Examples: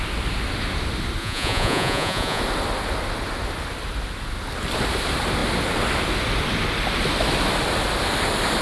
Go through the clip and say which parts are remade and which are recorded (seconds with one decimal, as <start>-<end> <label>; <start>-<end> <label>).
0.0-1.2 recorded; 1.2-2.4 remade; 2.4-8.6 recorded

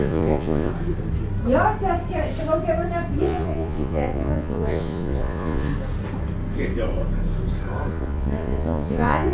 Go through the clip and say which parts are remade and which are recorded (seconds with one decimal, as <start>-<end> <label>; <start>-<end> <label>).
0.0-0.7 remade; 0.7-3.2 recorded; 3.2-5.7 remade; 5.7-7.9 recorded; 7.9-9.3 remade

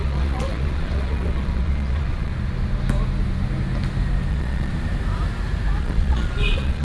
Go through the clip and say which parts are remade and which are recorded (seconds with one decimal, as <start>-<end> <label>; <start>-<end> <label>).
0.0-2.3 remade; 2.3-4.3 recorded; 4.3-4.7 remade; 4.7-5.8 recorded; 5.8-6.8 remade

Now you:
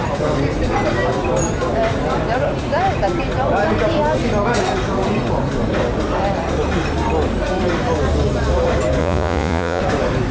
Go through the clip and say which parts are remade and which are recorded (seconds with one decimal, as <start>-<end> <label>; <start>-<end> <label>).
0.0-9.0 recorded; 9.0-9.8 remade; 9.8-10.3 recorded

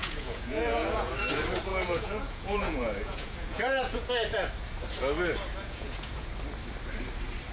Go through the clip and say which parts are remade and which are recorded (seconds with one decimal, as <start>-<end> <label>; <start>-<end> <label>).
0.0-1.1 remade; 1.1-1.7 recorded; 1.7-4.1 remade; 4.1-5.6 recorded; 5.6-6.3 remade; 6.3-7.5 recorded

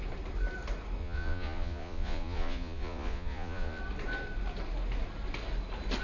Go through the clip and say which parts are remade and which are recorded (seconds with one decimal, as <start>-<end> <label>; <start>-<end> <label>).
0.0-1.0 recorded; 1.0-3.8 remade; 3.8-6.0 recorded

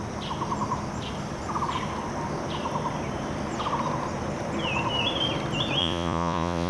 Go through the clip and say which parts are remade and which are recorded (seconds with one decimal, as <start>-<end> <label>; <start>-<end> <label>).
0.0-5.8 recorded; 5.8-6.7 remade

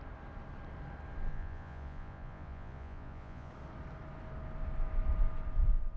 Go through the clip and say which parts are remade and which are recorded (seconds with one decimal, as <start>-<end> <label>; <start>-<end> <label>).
0.0-1.3 recorded; 1.3-3.5 remade; 3.5-6.0 recorded